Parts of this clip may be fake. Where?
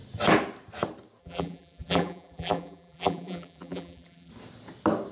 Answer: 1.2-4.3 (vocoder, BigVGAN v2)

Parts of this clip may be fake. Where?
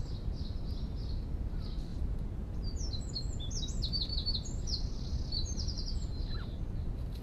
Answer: 1.9-6.2 (vocoder, BigVGAN v2)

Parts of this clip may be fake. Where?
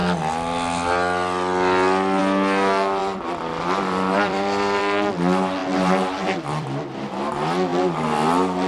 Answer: 3.0-4.8 (vocoder, BigVGAN v2); 5.6-7.1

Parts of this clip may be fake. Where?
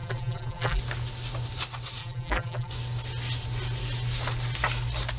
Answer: 0.0-0.8 (vocoder, BigVGAN v2); 2.0-2.7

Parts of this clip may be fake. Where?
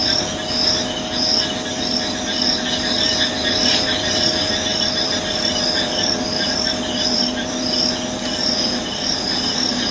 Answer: 1.7-2.7 (vocoder, BigVGAN v2); 4.7-7.8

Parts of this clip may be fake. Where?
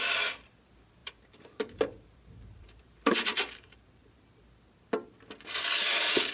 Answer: 1.0-4.2 (vocoder, BigVGAN v2)